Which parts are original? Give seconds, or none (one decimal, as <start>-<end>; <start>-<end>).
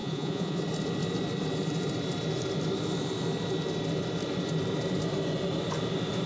0.6-6.3